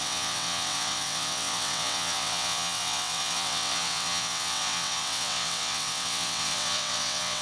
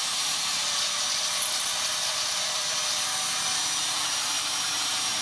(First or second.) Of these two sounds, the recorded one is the second